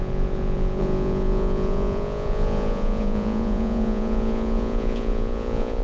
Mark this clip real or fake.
fake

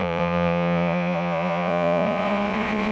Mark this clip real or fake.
fake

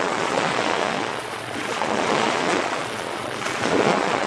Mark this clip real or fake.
fake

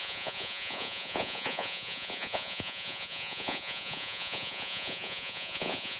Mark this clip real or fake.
fake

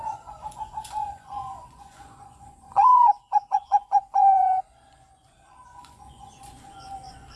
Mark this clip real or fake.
fake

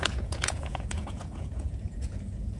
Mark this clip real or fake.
fake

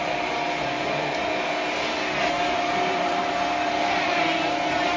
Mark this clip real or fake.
real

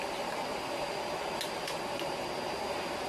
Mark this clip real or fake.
real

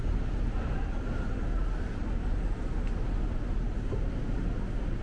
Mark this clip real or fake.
real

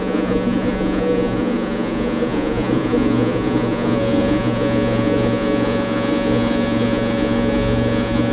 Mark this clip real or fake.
fake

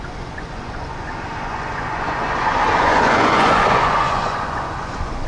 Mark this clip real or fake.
fake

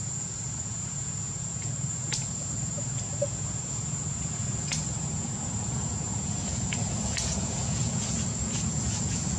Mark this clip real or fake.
fake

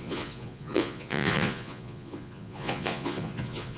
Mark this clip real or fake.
fake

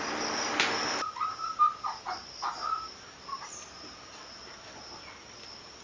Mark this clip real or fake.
real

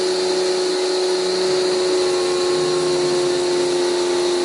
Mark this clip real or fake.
real